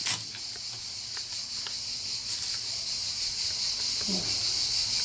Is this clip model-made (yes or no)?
no